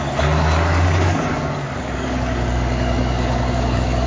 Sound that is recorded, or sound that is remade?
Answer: remade